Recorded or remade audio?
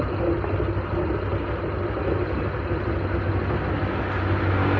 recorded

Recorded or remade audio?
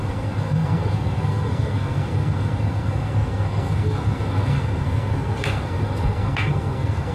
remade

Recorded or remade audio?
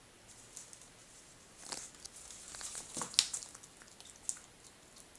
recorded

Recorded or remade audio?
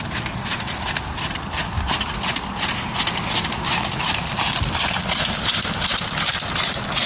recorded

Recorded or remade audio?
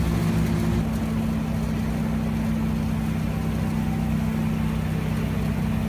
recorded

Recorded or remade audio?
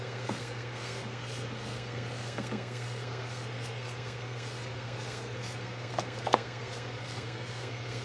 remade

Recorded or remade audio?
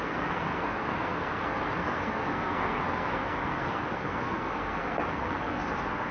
remade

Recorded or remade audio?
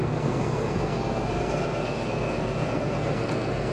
remade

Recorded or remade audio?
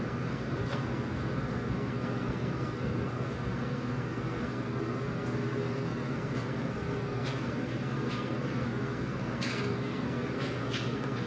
remade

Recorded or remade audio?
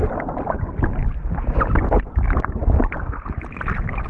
recorded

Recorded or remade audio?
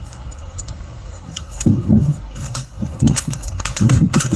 remade